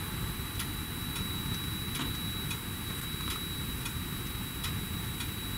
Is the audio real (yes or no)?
yes